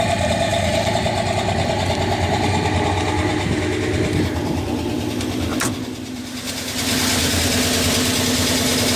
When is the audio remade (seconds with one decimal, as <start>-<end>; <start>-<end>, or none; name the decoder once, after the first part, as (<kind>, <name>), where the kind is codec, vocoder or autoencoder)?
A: none